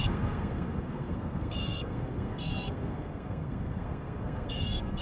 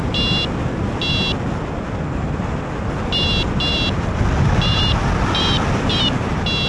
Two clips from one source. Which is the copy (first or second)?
first